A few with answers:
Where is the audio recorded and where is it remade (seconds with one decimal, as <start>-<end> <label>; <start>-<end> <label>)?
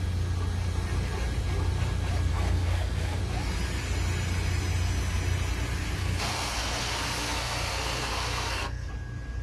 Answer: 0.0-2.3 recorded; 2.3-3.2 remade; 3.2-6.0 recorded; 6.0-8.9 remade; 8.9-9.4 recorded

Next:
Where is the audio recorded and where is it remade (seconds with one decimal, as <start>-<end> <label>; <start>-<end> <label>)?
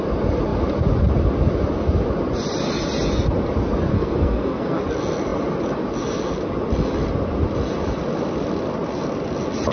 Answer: 0.0-3.9 recorded; 3.9-4.8 remade; 4.8-9.7 recorded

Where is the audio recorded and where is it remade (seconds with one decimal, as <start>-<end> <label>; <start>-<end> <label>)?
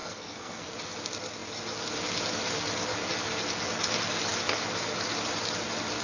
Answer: 0.0-0.7 remade; 0.7-6.0 recorded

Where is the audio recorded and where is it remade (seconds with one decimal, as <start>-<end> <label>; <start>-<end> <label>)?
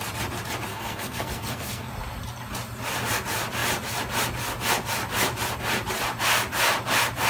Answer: 0.0-0.7 recorded; 0.7-1.9 remade; 1.9-7.3 recorded